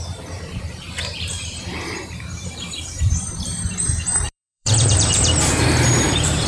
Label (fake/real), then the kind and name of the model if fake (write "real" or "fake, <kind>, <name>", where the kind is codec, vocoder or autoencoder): fake, vocoder, BigVGAN v2